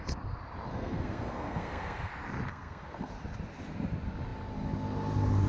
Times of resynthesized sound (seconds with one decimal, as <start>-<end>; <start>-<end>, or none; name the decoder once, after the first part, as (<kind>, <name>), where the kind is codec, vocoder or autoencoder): 0.7-2.1 (codec, SNAC); 2.5-3.1